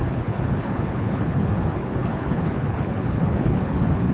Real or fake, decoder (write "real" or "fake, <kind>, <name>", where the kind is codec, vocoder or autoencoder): fake, codec, HILCodec